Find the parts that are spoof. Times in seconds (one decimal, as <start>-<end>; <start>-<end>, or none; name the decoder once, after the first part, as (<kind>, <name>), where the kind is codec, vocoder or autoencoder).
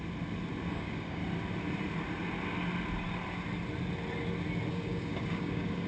0.7-1.2 (codec, DAC); 4.7-5.9